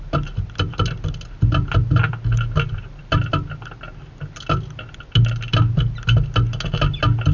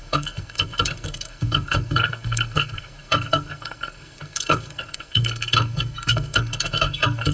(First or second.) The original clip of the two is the first